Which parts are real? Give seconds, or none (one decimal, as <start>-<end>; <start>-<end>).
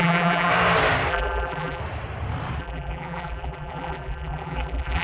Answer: 0.5-1.1; 1.8-2.6